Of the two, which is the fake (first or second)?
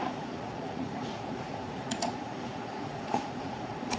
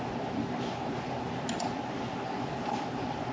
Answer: first